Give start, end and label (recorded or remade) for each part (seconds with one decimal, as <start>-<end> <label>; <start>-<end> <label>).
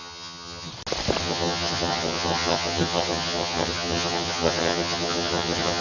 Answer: 0.0-0.7 remade; 0.7-1.2 recorded; 1.2-5.8 remade